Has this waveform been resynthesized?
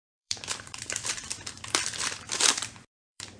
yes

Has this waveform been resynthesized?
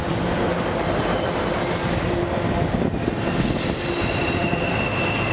no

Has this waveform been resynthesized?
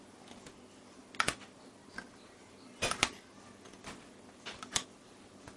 no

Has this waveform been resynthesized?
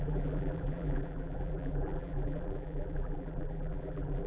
yes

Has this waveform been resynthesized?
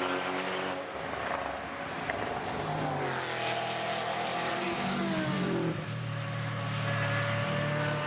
no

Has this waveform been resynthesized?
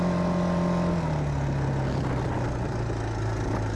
no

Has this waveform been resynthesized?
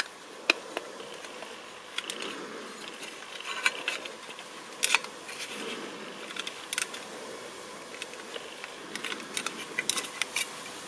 no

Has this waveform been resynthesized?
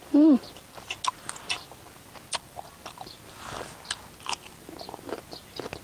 no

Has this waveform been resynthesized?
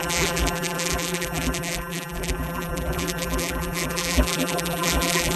yes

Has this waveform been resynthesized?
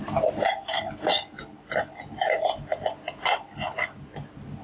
no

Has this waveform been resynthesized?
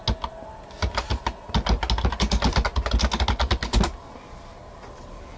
no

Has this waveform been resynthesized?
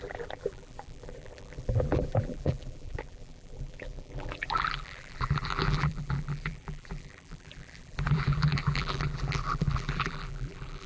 yes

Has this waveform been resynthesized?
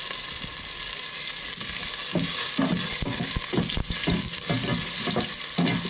no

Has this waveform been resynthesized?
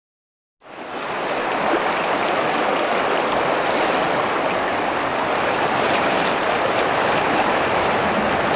no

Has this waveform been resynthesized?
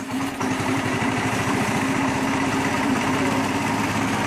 yes